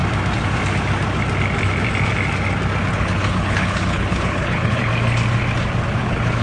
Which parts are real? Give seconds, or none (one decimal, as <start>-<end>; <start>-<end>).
0.0-2.9; 4.9-6.0